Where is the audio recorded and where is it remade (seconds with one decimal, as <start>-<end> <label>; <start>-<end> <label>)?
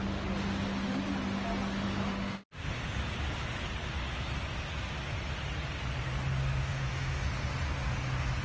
0.0-2.1 recorded; 2.1-2.7 remade; 2.7-6.4 recorded; 6.4-7.2 remade; 7.2-8.4 recorded